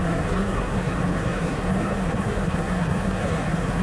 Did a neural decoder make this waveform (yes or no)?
yes